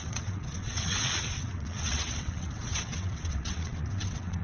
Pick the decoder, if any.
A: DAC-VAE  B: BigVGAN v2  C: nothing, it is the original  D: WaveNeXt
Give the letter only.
D